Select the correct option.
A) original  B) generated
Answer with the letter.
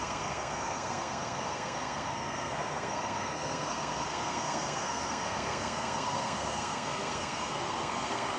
B